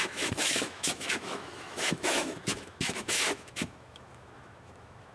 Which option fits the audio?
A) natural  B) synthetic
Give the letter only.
B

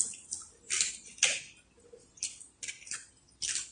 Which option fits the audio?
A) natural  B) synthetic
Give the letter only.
A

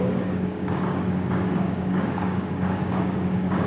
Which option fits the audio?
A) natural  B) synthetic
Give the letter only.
B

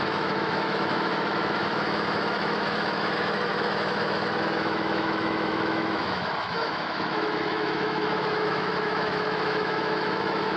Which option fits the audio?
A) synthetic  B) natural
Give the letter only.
A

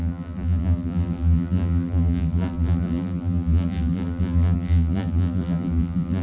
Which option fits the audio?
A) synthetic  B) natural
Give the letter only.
A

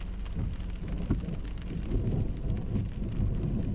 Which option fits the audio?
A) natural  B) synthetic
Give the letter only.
A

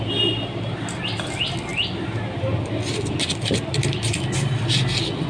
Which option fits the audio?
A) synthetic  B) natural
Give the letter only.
B